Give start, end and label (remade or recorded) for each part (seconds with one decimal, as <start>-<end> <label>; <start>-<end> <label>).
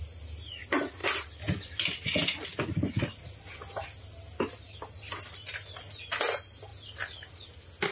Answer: 0.0-7.9 recorded